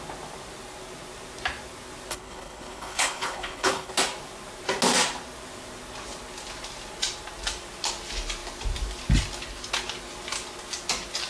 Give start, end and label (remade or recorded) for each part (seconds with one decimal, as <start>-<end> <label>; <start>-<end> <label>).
0.0-2.1 recorded; 2.1-3.9 remade; 3.9-11.3 recorded